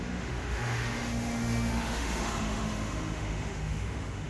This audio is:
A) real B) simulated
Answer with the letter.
B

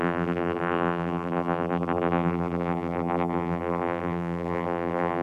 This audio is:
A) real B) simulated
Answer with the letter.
B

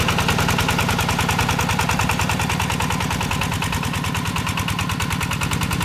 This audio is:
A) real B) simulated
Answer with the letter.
A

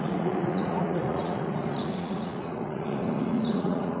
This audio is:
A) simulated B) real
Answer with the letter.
A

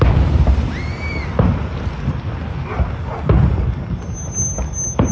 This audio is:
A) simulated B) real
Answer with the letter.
B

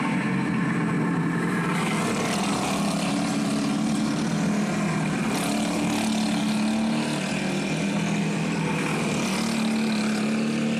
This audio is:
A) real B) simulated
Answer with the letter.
A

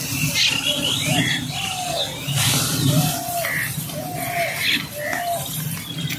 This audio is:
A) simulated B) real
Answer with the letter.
B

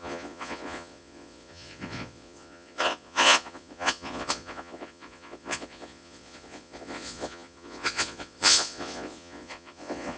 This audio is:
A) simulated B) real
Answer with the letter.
A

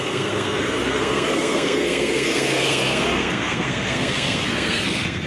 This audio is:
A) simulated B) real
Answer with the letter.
A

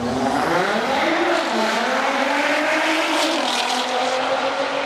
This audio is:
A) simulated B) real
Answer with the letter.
A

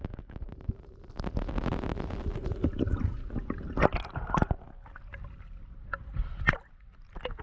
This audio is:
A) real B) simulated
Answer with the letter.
A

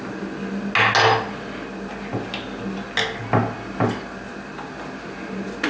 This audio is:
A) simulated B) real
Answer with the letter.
B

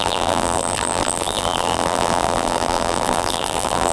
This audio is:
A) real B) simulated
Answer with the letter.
B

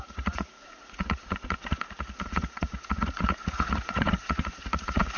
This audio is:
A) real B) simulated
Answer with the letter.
B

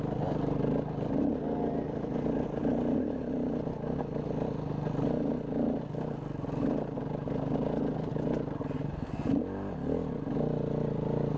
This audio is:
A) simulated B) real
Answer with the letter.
B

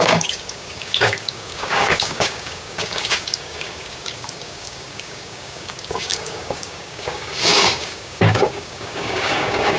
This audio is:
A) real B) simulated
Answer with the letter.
B